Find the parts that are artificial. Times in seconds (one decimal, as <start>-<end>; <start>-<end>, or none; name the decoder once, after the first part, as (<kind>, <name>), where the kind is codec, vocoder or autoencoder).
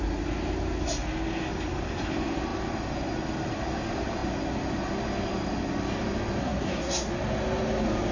6.4-7.1 (codec, SNAC)